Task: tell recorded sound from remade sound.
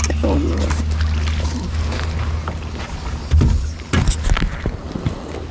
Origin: recorded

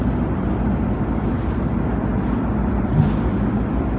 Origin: recorded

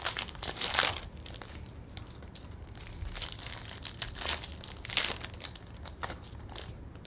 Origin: recorded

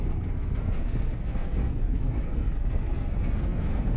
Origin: remade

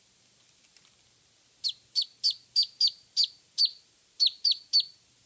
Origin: recorded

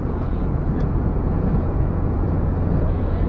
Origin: remade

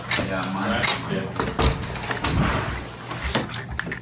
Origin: recorded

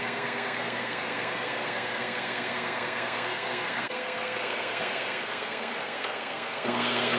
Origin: remade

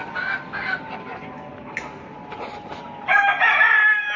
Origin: recorded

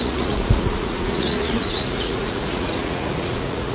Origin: remade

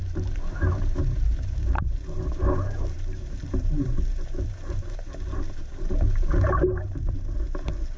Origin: remade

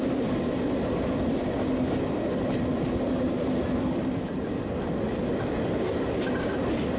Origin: recorded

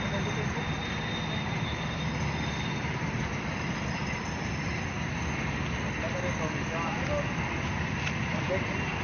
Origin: recorded